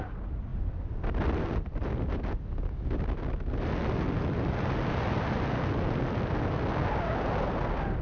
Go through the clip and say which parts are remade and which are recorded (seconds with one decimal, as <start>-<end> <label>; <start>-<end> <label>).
0.0-8.0 recorded